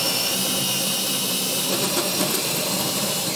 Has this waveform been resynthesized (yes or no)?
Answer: yes